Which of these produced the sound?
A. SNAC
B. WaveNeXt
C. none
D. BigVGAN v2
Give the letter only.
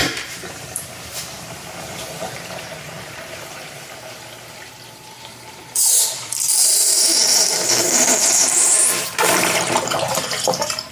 D